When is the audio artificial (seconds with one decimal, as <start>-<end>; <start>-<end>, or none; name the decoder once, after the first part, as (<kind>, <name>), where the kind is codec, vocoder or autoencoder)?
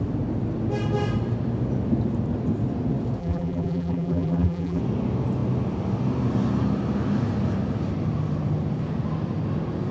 3.2-4.8 (vocoder, BigVGAN v2)